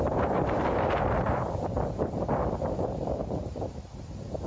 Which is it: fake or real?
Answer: fake